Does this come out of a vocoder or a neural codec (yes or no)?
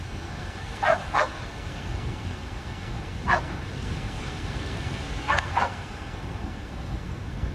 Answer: yes